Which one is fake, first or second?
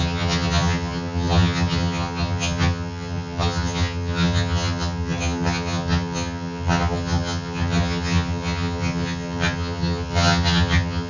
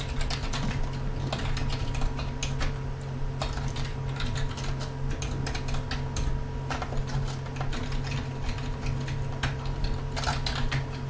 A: first